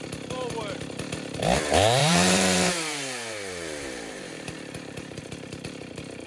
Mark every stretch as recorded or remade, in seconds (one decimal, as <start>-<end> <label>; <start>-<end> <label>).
0.0-2.0 recorded; 2.0-5.2 remade; 5.2-6.3 recorded